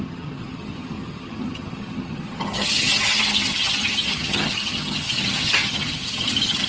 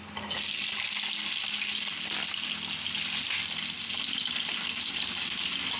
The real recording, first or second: second